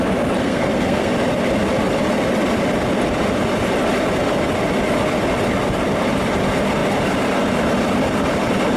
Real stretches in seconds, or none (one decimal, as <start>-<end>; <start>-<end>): 0.0-0.4; 1.1-8.8